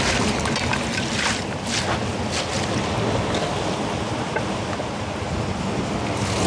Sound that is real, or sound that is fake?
real